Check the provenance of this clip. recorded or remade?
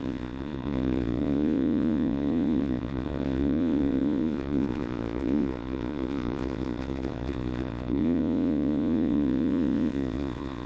remade